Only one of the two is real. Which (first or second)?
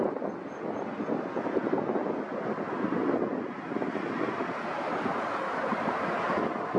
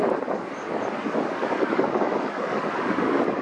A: first